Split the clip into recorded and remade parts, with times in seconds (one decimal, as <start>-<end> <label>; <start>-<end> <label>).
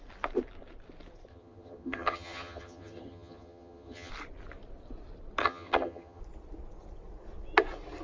0.0-1.3 recorded; 1.3-4.1 remade; 4.1-5.4 recorded; 5.4-6.2 remade; 6.2-8.0 recorded